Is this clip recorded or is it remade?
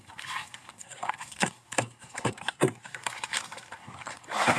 remade